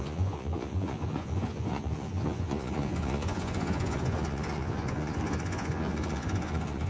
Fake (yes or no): yes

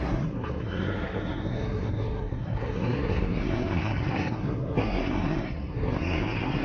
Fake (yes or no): yes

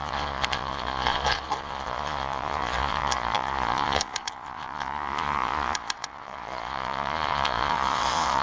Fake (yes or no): yes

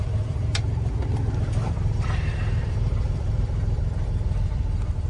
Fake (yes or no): yes